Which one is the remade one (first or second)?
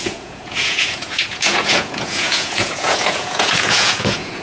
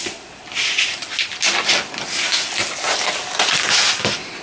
first